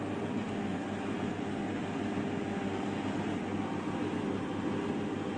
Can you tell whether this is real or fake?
real